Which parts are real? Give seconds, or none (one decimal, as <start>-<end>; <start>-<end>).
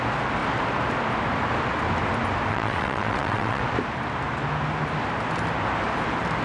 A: 0.0-2.5; 3.6-6.4